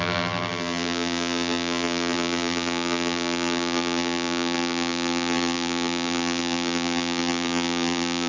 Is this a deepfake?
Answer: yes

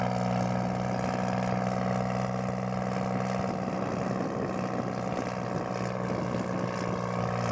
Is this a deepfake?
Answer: no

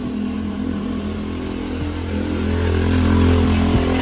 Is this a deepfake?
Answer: no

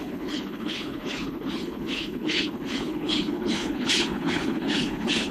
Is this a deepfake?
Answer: yes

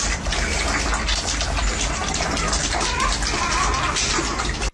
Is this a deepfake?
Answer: no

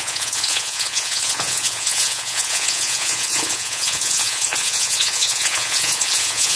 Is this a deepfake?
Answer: yes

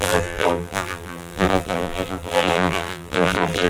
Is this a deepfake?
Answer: yes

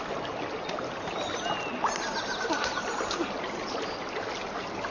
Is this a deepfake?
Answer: no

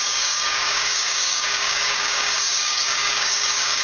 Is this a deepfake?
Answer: yes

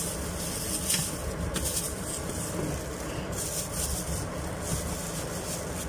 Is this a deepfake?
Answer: no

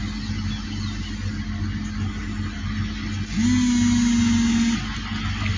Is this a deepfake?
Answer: no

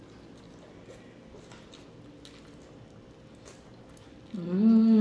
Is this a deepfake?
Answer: no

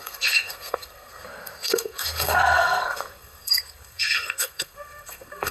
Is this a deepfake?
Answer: yes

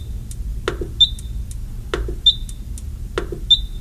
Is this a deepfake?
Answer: no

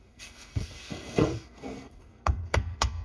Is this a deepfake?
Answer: yes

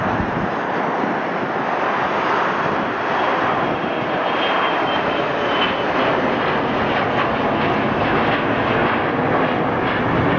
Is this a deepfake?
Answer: no